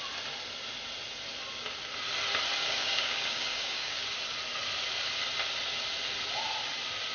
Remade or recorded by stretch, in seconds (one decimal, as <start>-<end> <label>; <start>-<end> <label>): 0.0-2.6 recorded; 2.6-4.0 remade; 4.0-7.1 recorded